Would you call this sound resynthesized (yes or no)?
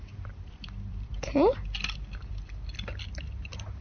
yes